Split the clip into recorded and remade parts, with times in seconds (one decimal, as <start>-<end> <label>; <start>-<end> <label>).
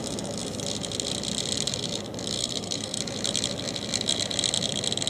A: 0.0-2.4 recorded; 2.4-3.0 remade; 3.0-5.1 recorded